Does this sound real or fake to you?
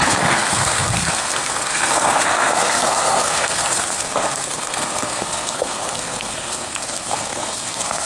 fake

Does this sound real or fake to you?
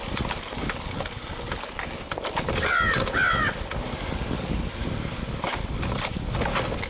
real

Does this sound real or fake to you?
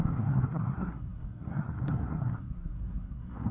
fake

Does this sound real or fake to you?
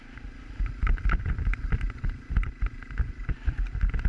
real